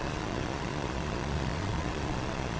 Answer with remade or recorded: remade